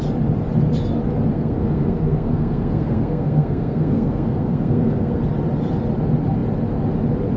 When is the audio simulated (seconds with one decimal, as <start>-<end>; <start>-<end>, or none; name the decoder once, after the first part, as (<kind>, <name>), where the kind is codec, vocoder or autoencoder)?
1.3-5.2 (codec, SNAC)